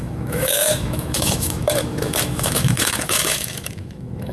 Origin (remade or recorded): remade